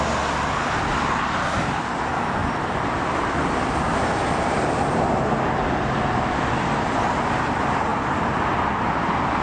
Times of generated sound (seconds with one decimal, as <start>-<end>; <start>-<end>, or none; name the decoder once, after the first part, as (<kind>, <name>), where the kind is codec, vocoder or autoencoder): 2.4-5.2 (vocoder, BigVGAN v2)